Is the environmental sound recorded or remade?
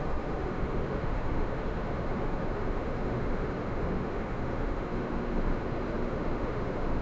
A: remade